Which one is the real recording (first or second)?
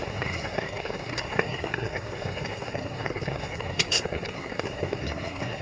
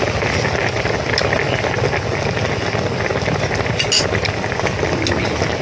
second